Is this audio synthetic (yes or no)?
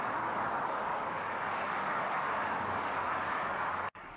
yes